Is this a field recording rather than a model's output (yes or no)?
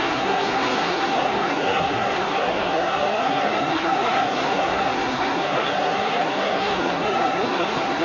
no